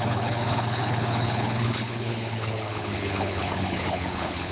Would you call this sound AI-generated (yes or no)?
yes